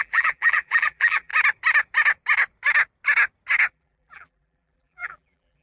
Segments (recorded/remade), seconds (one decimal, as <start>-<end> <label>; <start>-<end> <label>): 0.0-1.3 remade; 1.3-3.7 recorded; 3.7-5.6 remade